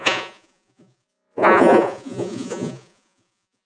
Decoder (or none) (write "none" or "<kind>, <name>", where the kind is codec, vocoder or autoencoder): vocoder, Vocos